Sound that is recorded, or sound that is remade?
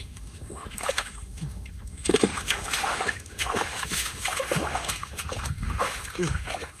remade